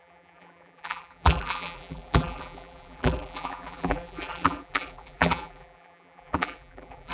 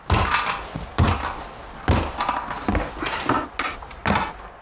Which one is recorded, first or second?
second